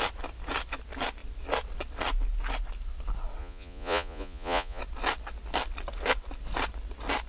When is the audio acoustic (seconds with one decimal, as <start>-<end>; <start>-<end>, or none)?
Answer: 0.0-3.4; 4.8-7.3